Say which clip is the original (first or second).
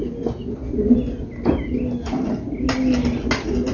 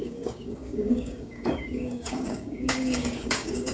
first